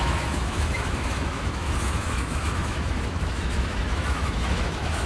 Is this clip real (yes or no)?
no